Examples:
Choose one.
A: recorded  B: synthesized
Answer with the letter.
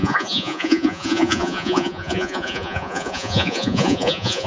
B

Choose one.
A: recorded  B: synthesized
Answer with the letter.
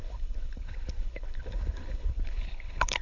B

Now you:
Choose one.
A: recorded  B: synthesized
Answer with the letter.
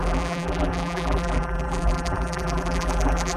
B